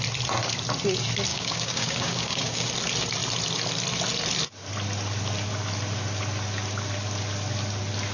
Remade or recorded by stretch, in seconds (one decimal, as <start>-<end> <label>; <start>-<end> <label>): 0.0-1.3 recorded; 1.3-2.7 remade; 2.7-8.1 recorded